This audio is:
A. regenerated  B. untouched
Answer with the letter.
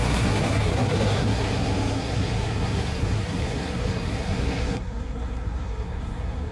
A